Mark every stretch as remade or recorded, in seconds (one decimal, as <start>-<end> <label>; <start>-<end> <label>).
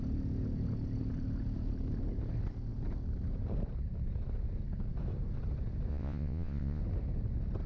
0.0-5.9 recorded; 5.9-6.8 remade; 6.8-7.7 recorded